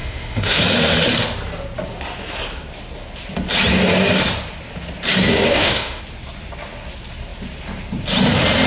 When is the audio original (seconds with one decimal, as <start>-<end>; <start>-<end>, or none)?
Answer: 0.6-5.5; 6.0-8.7

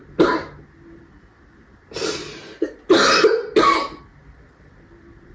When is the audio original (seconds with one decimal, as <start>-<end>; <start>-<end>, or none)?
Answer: 0.0-5.3

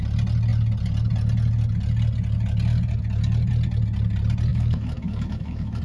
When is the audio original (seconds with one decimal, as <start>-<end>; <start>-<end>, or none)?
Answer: 0.0-4.5

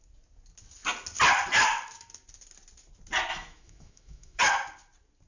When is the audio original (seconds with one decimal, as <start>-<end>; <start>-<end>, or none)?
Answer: 0.0-3.3; 4.4-5.3

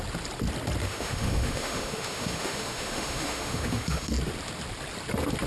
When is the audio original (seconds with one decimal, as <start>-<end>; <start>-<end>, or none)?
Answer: 0.0-0.8; 4.1-5.5

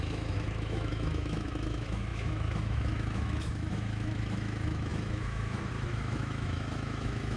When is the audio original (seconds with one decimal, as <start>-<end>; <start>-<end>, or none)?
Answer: none

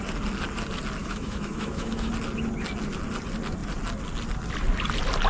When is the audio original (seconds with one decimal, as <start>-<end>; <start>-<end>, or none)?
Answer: 0.0-1.0; 2.1-5.3

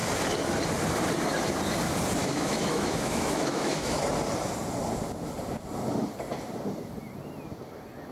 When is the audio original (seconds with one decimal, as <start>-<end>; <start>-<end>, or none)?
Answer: 0.0-2.2; 4.0-8.1